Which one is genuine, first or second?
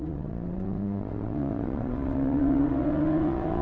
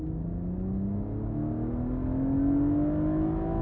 second